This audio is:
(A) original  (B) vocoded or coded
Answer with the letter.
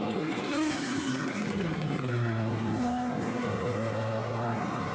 B